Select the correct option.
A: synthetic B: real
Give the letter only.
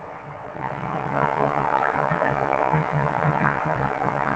A